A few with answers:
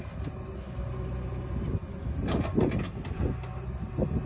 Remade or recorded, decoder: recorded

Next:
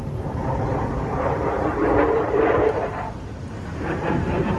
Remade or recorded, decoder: remade, vocoder, BigVGAN v2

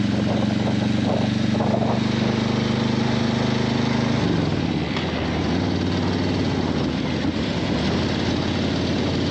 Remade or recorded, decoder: recorded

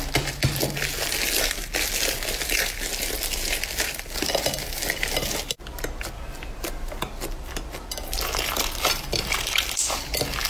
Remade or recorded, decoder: recorded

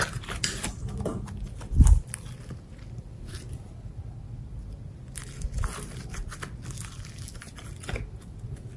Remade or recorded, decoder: recorded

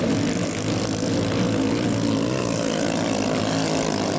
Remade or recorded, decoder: recorded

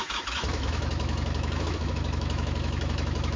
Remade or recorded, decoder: remade, autoencoder, DAC-VAE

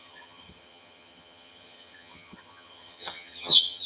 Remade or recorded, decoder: remade, vocoder, HiFi-GAN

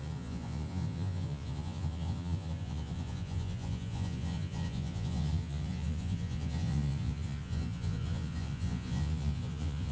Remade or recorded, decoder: remade, vocoder, Vocos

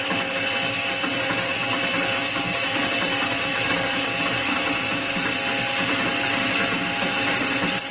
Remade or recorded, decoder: recorded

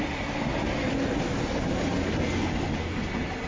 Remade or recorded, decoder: recorded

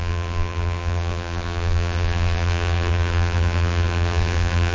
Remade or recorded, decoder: remade, vocoder, BigVGAN v2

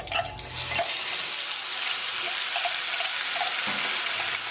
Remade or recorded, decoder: recorded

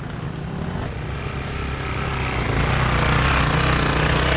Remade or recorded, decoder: recorded